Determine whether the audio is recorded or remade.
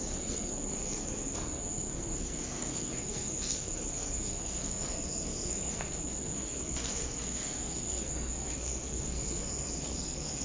remade